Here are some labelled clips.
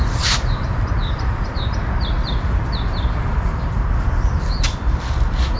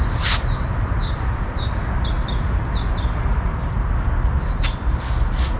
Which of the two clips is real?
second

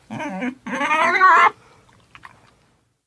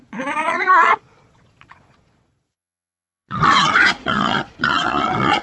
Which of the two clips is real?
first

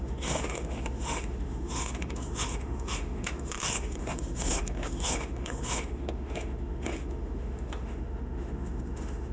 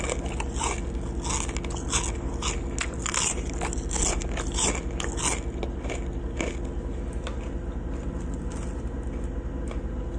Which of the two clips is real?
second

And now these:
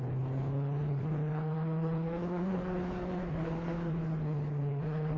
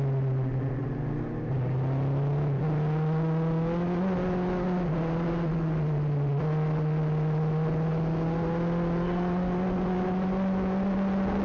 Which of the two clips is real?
second